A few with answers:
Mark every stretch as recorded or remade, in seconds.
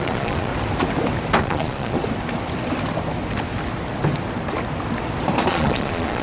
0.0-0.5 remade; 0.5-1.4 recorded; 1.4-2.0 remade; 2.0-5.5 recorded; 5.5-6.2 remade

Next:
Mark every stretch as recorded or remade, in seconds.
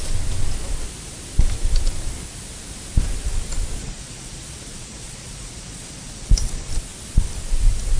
0.0-3.8 recorded; 3.8-6.7 remade; 6.7-8.0 recorded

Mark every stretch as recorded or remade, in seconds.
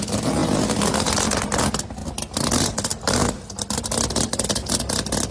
0.0-5.3 recorded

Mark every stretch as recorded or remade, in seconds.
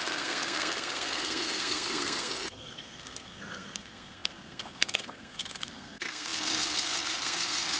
0.0-7.8 remade